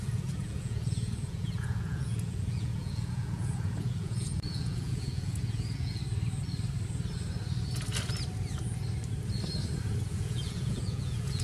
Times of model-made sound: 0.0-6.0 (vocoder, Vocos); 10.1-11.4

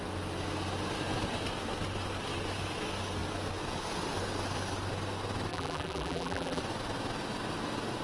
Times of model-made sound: 5.5-6.6 (vocoder, BigVGAN v2)

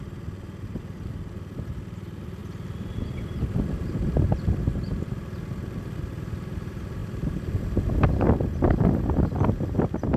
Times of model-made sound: none

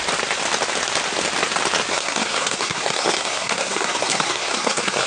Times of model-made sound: 1.9-5.1 (codec, SNAC)

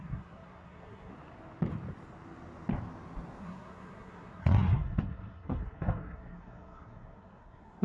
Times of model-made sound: 0.0-1.1 (codec, SNAC); 3.4-7.8